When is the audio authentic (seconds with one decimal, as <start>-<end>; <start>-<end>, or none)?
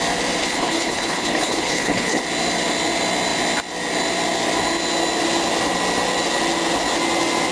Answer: 0.0-0.4; 2.2-7.5